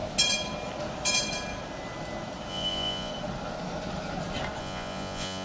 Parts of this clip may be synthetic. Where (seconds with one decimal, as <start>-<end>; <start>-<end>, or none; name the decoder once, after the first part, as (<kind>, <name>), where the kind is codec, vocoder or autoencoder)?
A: 2.5-3.1 (vocoder, Vocos); 4.6-5.4